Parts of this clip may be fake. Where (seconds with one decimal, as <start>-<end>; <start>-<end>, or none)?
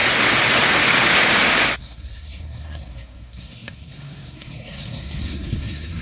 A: 1.8-6.0